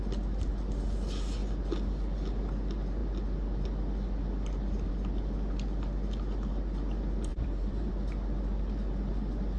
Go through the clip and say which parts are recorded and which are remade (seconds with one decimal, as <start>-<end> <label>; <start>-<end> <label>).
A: 0.0-7.3 recorded; 7.3-7.9 remade; 7.9-9.6 recorded